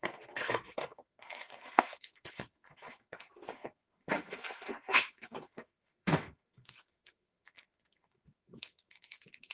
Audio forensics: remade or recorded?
remade